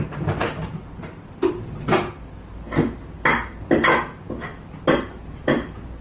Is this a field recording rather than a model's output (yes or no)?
yes